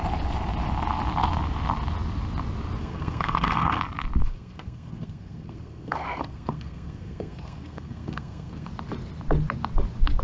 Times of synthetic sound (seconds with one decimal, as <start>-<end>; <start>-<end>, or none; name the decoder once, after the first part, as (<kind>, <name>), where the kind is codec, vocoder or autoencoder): 2.8-3.8 (codec, SNAC); 4.2-8.7